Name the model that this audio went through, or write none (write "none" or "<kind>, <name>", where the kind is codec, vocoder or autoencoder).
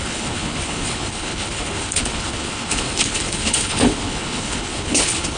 codec, HILCodec